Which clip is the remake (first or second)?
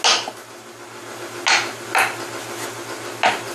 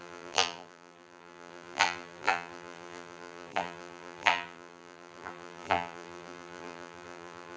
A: second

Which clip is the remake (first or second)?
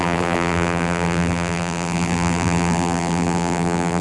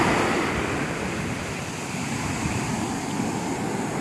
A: first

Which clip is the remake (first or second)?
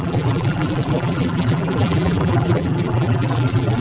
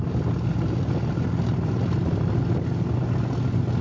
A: first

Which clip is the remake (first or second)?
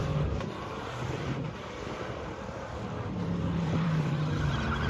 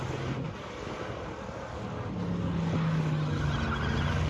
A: first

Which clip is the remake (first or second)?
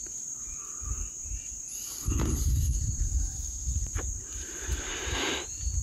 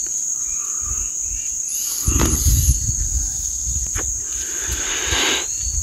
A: first